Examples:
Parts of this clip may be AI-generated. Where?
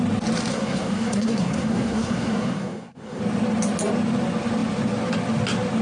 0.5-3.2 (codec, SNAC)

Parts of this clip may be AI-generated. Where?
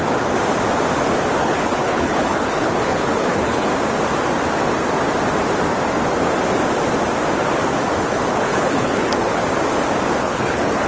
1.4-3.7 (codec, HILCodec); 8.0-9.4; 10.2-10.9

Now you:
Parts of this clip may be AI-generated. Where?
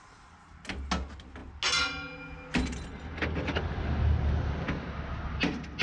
none